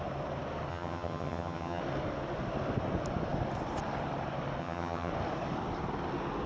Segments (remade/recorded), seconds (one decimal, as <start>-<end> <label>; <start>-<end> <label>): 0.0-0.7 recorded; 0.7-1.8 remade; 1.8-4.6 recorded; 4.6-5.1 remade; 5.1-6.5 recorded